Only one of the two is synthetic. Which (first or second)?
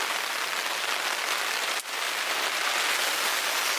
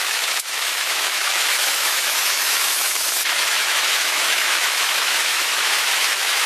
second